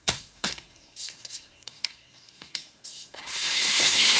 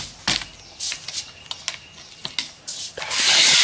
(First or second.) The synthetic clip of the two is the first